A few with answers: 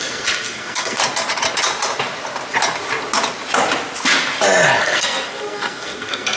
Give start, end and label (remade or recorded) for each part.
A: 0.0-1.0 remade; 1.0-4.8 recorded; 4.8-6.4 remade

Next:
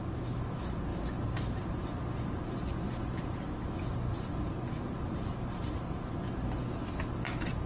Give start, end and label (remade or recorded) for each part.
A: 0.0-7.7 recorded

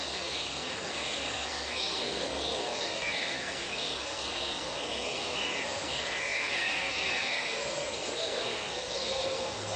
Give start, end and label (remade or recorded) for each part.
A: 0.0-9.8 remade